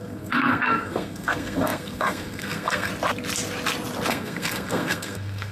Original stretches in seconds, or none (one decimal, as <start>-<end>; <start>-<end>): 2.9-4.1